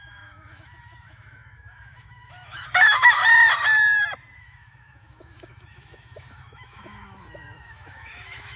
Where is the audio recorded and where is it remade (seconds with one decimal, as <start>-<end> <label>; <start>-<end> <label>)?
0.0-3.2 remade; 3.2-4.4 recorded; 4.4-8.6 remade